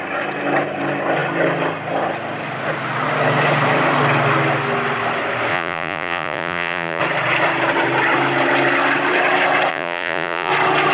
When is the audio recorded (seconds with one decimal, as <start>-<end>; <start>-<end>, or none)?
0.0-5.5; 7.0-9.7; 10.5-10.9